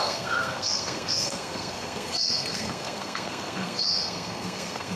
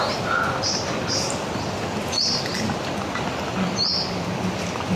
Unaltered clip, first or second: second